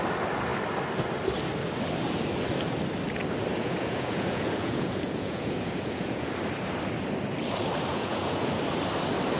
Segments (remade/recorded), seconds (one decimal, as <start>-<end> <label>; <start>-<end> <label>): 0.0-3.5 recorded; 3.5-6.3 remade; 6.3-7.9 recorded; 7.9-8.4 remade; 8.4-9.4 recorded